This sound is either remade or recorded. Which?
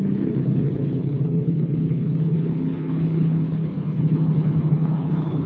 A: remade